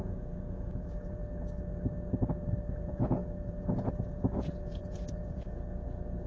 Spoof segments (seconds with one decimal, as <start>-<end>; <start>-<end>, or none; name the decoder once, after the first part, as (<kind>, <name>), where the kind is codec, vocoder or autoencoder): 0.0-1.2 (vocoder, Vocos); 2.7-6.3